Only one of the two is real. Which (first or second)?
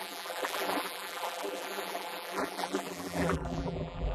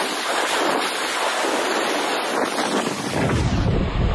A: second